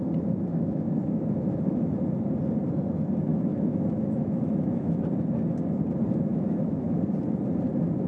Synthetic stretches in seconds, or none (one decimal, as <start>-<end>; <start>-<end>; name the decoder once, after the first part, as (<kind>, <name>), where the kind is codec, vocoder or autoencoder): 0.5-1.9 (autoencoder, DAC-VAE); 3.3-5.0; 6.3-7.0